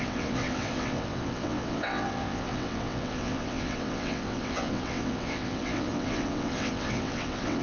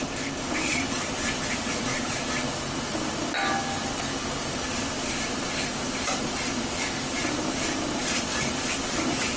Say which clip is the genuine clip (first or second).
second